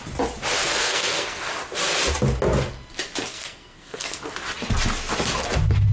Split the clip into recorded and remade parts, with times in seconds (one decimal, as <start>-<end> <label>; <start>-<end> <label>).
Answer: 0.0-0.6 recorded; 0.6-1.5 remade; 1.5-3.3 recorded; 3.3-4.2 remade; 4.2-5.9 recorded